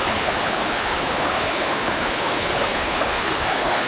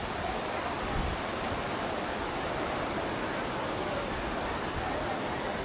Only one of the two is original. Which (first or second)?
second